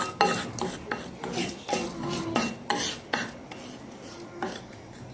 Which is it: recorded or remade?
recorded